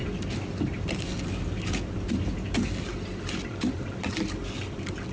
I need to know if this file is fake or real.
real